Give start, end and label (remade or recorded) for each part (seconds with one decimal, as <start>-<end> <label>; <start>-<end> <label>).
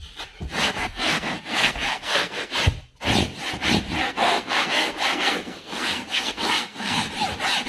0.0-0.6 recorded; 0.6-2.5 remade; 2.5-4.0 recorded; 4.0-7.1 remade; 7.1-7.7 recorded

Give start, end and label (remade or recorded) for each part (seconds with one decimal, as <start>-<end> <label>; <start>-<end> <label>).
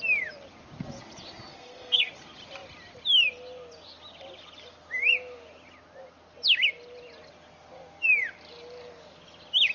0.0-1.5 recorded; 1.5-2.1 remade; 2.1-9.7 recorded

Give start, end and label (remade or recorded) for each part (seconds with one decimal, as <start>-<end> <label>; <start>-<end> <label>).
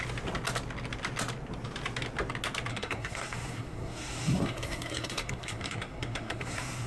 0.0-2.7 recorded; 2.7-6.9 remade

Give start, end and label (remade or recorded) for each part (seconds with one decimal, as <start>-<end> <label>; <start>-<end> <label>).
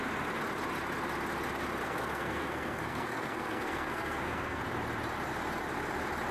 0.0-1.8 recorded; 1.8-4.6 remade; 4.6-6.3 recorded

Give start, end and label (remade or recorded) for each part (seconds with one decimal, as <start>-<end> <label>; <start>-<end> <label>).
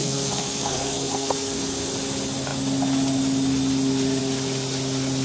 0.0-1.6 remade; 1.6-5.2 recorded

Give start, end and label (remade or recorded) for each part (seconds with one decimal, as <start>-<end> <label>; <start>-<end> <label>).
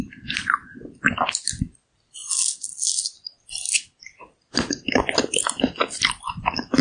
0.0-6.8 recorded